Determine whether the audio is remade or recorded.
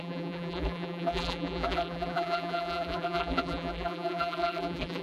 remade